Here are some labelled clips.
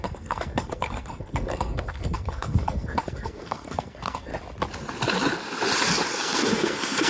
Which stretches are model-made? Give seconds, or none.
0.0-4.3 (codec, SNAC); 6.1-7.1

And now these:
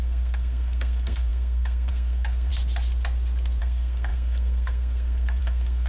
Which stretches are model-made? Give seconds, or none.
0.0-2.5 (codec, SNAC); 3.6-5.9

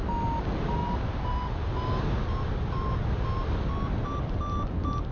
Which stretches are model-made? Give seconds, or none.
none

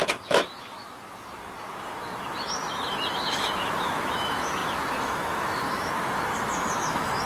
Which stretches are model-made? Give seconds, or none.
0.0-7.3 (autoencoder, DAC-VAE)

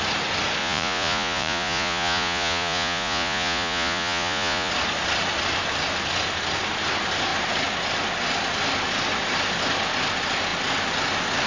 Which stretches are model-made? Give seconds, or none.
0.6-4.7 (vocoder, Vocos)

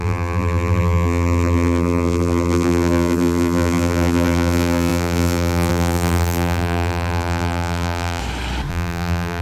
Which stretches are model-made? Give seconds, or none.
0.0-8.2 (vocoder, BigVGAN v2); 8.7-9.4